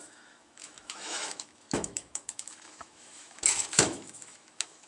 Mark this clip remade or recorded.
remade